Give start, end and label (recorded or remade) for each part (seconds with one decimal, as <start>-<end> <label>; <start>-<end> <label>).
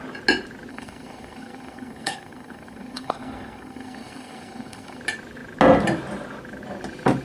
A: 0.0-0.7 recorded; 0.7-5.0 remade; 5.0-7.2 recorded